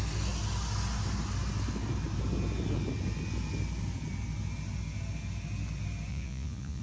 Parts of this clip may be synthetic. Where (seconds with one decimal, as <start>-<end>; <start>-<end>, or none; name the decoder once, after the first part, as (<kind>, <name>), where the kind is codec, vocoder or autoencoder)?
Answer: 6.1-6.8 (vocoder, Vocos)